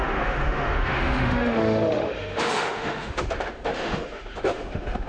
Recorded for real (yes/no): no